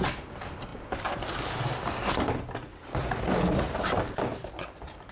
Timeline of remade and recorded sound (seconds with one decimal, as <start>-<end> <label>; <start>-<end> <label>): 0.0-5.1 recorded